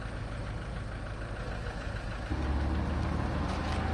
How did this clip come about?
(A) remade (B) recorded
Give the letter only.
B